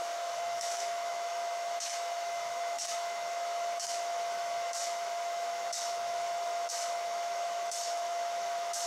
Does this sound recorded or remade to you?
remade